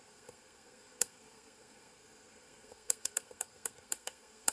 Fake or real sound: fake